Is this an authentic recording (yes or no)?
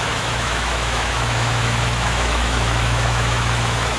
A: no